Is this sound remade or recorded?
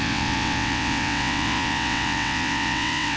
remade